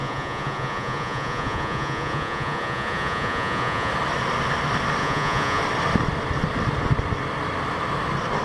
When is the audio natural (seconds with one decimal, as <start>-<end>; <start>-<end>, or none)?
3.9-5.0; 5.6-8.4